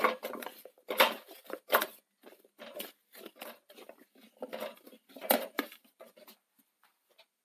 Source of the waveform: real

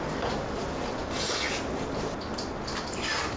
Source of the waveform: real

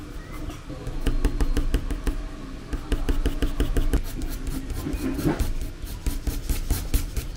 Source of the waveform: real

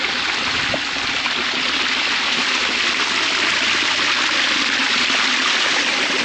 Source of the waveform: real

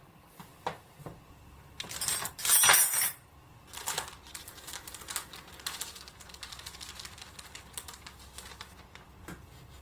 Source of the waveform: real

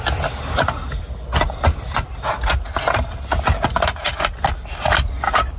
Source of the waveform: real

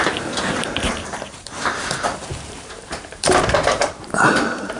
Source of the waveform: fake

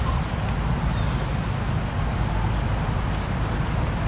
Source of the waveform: real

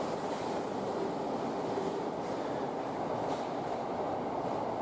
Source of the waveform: real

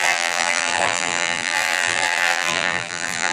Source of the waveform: fake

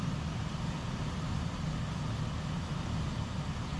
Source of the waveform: real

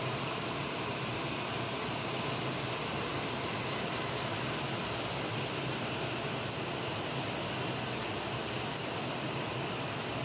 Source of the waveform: real